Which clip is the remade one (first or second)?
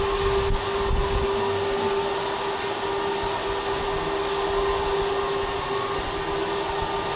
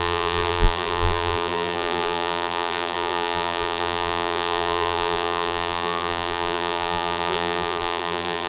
second